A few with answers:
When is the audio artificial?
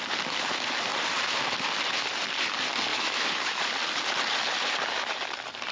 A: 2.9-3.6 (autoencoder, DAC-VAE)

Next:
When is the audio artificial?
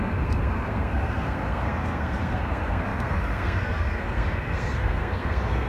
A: 0.0-5.7 (codec, SNAC)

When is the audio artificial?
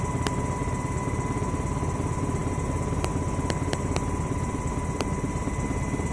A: none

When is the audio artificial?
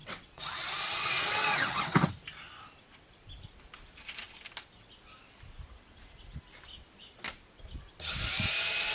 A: 0.0-2.1 (vocoder, WaveNeXt)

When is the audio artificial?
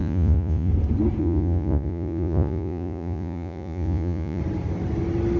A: 0.0-0.7 (vocoder, Vocos); 1.2-4.4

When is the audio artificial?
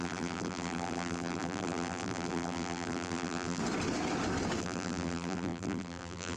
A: 0.0-3.6 (vocoder, BigVGAN v2); 4.6-6.4